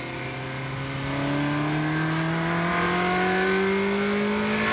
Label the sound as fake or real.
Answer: real